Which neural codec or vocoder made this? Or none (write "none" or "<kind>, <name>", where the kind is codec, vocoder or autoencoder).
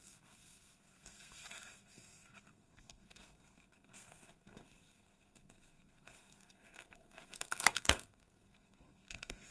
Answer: codec, SNAC